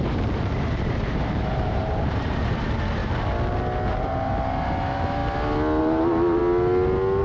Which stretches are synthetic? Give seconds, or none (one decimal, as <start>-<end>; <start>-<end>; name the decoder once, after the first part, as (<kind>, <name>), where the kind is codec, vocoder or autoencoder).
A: 0.0-3.0 (vocoder, BigVGAN v2); 3.9-5.2; 5.8-6.4